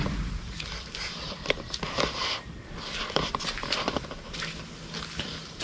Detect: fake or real real